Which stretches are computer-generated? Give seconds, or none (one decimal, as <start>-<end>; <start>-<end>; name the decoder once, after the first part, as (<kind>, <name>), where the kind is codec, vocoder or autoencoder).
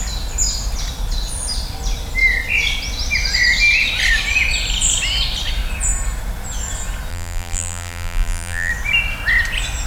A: 7.1-8.7 (vocoder, BigVGAN v2)